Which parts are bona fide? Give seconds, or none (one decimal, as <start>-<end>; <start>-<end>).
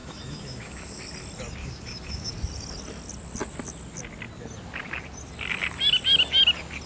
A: 1.0-1.6; 2.3-6.9